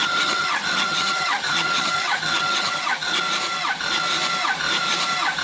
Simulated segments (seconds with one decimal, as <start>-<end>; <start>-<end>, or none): 0.0-3.2